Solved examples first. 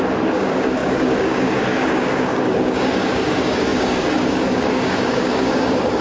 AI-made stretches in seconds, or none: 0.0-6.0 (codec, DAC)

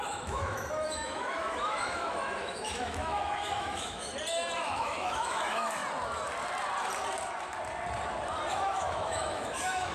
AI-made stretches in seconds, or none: 0.0-4.1 (autoencoder, DAC-VAE); 4.6-5.8; 8.5-9.9